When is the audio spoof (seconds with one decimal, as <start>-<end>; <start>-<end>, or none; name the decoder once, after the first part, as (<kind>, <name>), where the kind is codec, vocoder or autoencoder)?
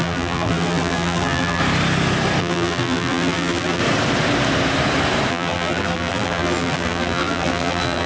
0.0-1.6 (vocoder, BigVGAN v2); 2.4-3.8; 5.3-8.1